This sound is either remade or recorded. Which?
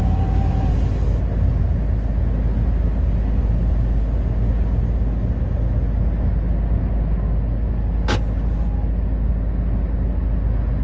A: recorded